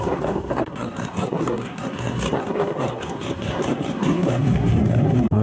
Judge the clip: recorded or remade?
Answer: remade